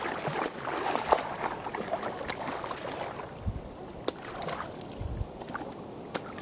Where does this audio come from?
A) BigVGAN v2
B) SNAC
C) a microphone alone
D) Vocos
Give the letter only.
C